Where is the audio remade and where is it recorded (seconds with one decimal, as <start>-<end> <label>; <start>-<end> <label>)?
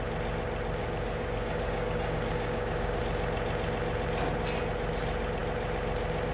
0.0-0.8 recorded; 0.8-3.0 remade; 3.0-6.3 recorded